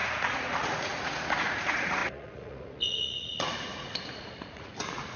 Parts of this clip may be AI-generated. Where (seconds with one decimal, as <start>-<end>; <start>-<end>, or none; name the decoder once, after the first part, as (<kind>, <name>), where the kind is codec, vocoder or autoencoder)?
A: 0.0-5.2 (vocoder, Vocos)